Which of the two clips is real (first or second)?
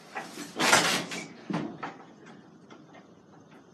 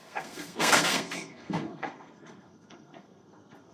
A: first